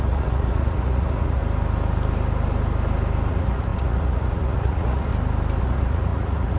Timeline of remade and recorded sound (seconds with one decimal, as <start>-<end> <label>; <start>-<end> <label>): 0.0-1.4 remade; 1.4-3.3 recorded; 3.3-5.1 remade; 5.1-5.6 recorded; 5.6-6.6 remade